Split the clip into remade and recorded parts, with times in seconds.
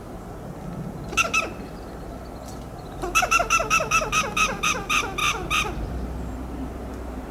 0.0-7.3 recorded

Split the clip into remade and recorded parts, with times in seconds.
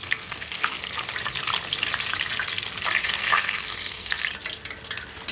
0.0-0.8 remade; 0.8-3.0 recorded; 3.0-4.2 remade; 4.2-5.3 recorded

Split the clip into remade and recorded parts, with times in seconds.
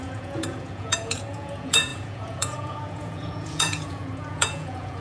0.0-5.0 remade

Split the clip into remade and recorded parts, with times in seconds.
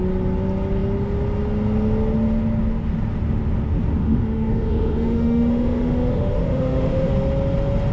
0.0-4.0 recorded; 4.0-7.1 remade; 7.1-7.9 recorded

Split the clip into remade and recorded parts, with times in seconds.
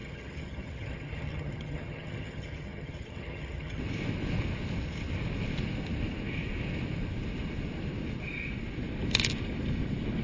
0.0-3.8 remade; 3.8-10.2 recorded